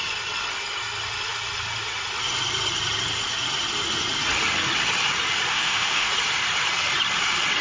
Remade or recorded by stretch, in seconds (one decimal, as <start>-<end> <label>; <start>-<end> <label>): 0.0-5.5 recorded; 5.5-6.1 remade; 6.1-7.6 recorded